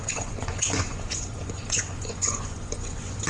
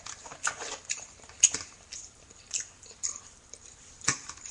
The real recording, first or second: second